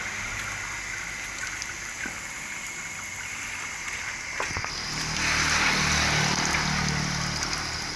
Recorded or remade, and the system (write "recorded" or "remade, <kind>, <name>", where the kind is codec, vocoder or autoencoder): recorded